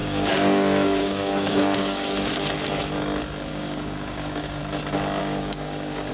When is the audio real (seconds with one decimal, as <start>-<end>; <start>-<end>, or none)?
2.3-3.5; 4.6-5.2